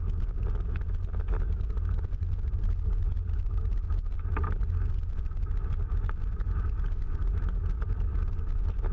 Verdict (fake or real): real